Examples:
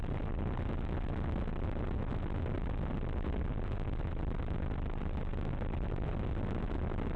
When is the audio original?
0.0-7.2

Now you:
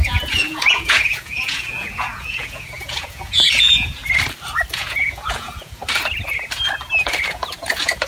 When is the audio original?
4.0-4.7; 5.8-7.0

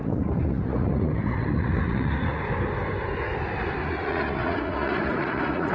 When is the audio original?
2.4-3.8

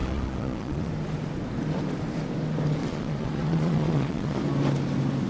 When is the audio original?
0.9-2.8; 4.4-5.3

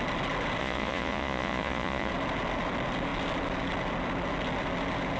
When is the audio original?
0.0-0.6; 2.1-5.2

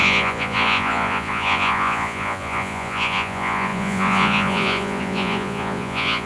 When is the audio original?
none